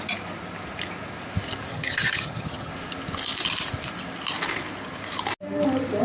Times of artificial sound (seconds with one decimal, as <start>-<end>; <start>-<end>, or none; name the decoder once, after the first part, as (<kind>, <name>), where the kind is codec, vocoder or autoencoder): 1.7-2.7 (vocoder, HiFi-GAN)